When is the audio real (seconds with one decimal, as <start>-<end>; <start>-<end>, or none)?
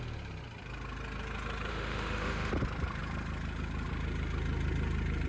0.0-1.7; 2.5-5.3